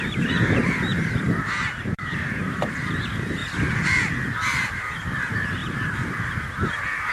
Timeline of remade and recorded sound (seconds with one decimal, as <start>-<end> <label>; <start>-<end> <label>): 0.0-3.4 remade; 3.4-3.9 recorded; 3.9-7.1 remade